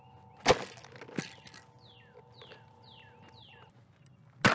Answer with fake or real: real